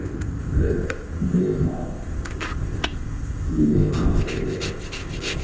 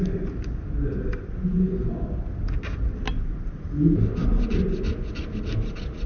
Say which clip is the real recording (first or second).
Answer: second